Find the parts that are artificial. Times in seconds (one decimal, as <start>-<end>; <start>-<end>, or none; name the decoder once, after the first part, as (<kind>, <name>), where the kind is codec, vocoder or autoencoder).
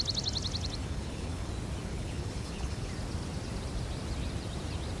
0.8-1.5 (codec, HILCodec); 1.9-2.9